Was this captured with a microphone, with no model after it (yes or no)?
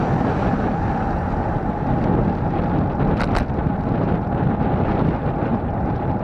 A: yes